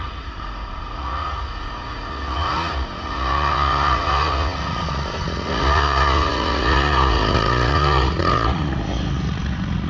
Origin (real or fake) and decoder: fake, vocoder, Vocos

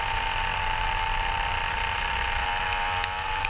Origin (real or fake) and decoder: real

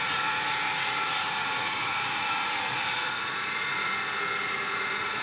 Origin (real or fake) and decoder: fake, vocoder, Vocos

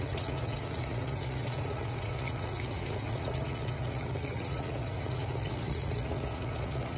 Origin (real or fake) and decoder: fake, vocoder, Vocos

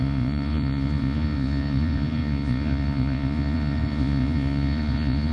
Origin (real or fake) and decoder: fake, vocoder, Vocos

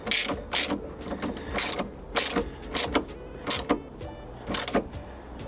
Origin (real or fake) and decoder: real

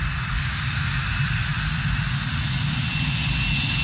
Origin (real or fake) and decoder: real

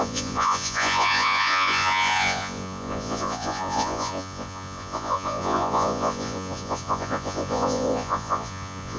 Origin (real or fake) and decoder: fake, vocoder, Vocos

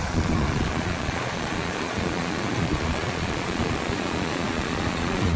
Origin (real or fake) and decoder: fake, vocoder, Vocos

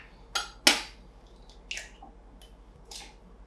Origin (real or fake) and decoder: real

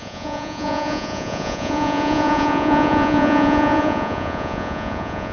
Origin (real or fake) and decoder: fake, vocoder, Vocos